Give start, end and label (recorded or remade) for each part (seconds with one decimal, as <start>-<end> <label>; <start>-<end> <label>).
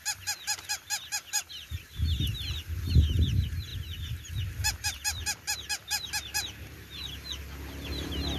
0.0-8.4 recorded